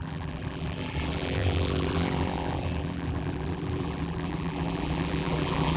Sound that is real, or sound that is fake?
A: fake